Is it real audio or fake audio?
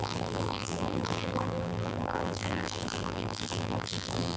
fake